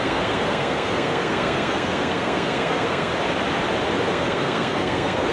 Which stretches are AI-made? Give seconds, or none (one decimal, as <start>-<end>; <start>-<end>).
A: 0.0-3.1; 4.1-5.3